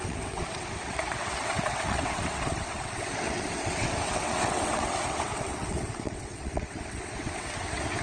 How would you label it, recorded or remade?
remade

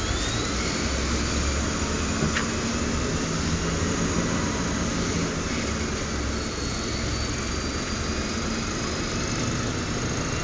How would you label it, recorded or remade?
recorded